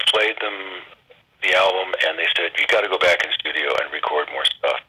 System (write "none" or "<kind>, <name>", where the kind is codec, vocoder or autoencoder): none